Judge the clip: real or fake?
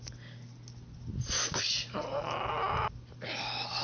real